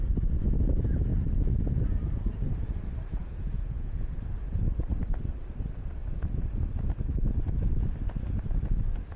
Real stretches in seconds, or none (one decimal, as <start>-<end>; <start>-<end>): 0.0-3.2; 4.2-9.2

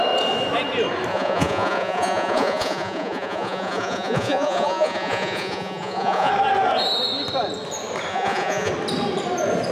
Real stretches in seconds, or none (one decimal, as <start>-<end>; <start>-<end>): 0.0-1.1; 6.3-8.1; 8.7-9.7